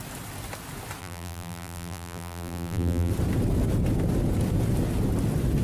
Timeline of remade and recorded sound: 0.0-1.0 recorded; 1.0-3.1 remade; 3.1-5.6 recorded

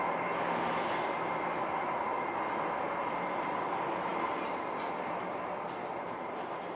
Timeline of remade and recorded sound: 0.0-6.8 recorded

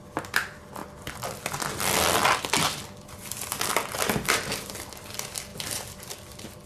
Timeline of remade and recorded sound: 0.0-5.5 recorded; 5.5-6.7 remade

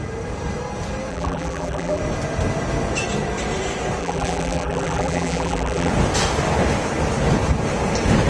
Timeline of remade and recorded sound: 0.0-1.1 recorded; 1.1-2.0 remade; 2.0-4.0 recorded; 4.0-5.9 remade; 5.9-8.3 recorded